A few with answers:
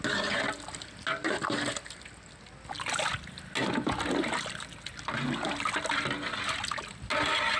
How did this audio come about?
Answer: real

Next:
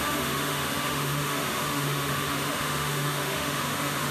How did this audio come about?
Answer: fake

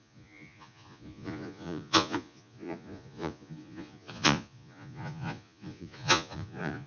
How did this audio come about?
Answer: fake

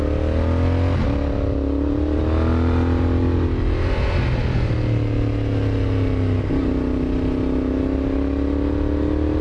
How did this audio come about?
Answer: real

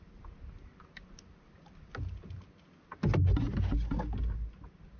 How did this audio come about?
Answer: real